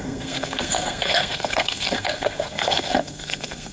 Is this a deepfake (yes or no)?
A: yes